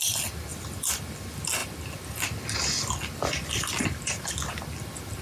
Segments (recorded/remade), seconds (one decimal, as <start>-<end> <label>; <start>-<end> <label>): 0.0-0.5 recorded; 0.5-1.0 remade; 1.0-5.2 recorded